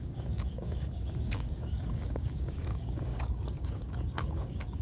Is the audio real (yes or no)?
no